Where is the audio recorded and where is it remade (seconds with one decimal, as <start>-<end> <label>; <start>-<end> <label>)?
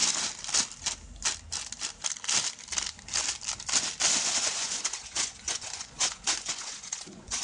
0.0-4.4 recorded; 4.4-7.4 remade